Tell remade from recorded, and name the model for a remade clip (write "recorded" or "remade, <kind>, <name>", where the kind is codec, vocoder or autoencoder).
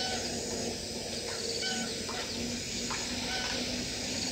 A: recorded